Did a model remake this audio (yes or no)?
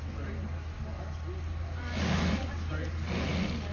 no